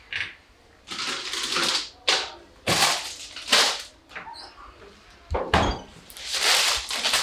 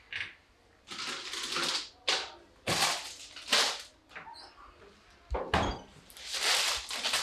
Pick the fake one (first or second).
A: first